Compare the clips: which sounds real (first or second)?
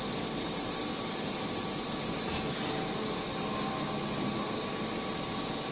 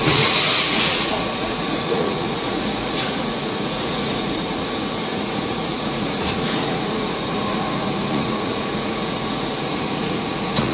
first